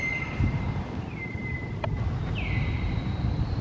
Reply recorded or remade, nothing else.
recorded